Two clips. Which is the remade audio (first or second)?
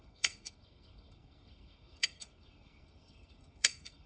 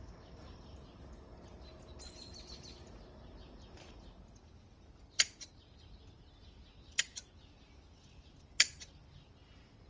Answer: first